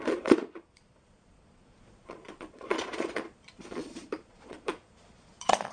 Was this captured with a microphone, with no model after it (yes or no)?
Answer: no